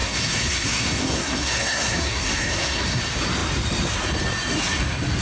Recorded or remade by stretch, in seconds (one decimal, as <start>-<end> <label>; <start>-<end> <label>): 0.0-3.0 remade; 3.0-5.2 recorded